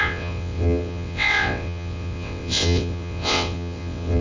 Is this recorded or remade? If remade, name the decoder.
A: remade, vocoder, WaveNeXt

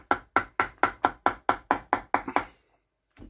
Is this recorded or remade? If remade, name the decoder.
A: recorded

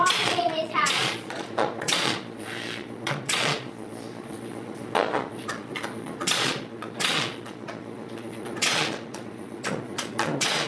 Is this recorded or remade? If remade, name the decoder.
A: remade, vocoder, Vocos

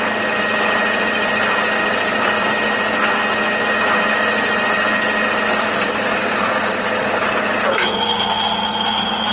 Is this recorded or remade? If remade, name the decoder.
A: recorded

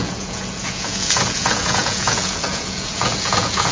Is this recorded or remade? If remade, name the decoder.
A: remade, vocoder, Vocos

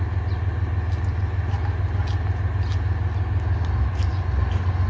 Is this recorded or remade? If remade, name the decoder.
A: recorded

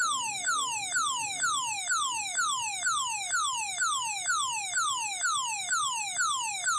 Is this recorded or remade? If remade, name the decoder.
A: recorded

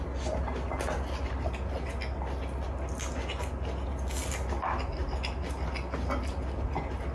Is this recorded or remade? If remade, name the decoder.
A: recorded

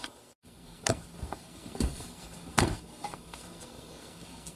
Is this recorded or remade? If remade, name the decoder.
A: remade, codec, SNAC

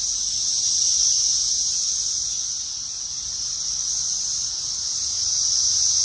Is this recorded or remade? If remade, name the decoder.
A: recorded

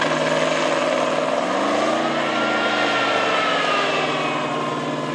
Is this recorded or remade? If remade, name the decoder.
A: recorded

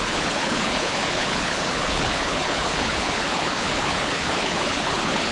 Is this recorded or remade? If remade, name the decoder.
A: remade, codec, HILCodec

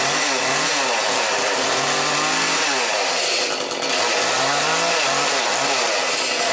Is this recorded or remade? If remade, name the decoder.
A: recorded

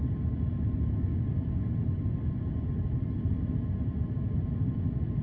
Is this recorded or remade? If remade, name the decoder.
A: recorded